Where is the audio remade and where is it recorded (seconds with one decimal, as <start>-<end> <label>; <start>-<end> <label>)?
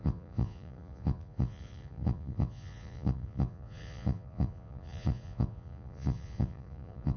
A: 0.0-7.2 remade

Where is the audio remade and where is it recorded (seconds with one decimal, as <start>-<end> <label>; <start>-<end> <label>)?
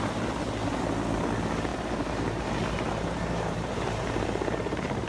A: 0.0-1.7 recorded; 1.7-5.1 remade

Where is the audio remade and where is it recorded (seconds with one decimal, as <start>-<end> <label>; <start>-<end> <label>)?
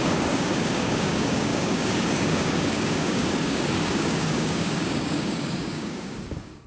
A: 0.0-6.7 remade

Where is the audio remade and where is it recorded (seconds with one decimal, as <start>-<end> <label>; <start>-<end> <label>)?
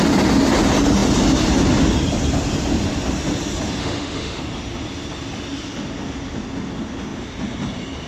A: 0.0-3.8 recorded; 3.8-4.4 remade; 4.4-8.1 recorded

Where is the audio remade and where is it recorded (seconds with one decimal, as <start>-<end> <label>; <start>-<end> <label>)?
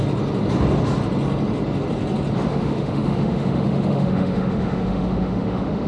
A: 0.0-2.5 recorded; 2.5-5.9 remade